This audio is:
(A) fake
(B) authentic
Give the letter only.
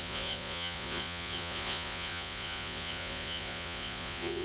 A